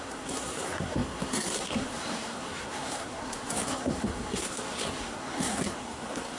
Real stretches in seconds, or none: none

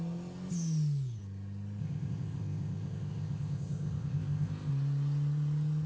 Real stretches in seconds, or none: 0.0-1.8; 4.7-5.9

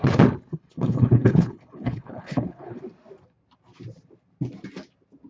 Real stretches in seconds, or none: 0.0-0.5; 2.8-5.3